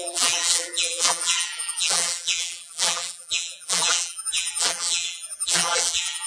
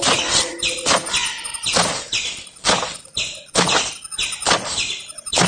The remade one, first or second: first